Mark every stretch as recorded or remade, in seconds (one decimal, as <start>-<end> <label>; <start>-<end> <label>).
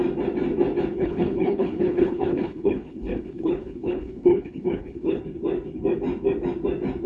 0.0-0.9 recorded; 0.9-5.2 remade; 5.2-7.1 recorded